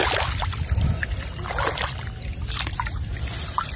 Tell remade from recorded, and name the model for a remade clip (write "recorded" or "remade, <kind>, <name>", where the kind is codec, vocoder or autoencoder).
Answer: remade, vocoder, BigVGAN v2